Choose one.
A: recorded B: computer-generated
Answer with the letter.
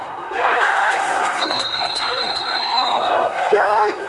B